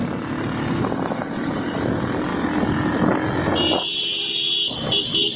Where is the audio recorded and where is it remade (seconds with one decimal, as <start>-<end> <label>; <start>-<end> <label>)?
0.0-0.8 recorded; 0.8-2.3 remade; 2.3-3.5 recorded; 3.5-5.4 remade